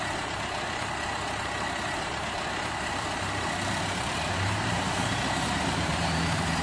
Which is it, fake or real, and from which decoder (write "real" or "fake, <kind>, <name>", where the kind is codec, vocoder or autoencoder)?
fake, vocoder, BigVGAN v2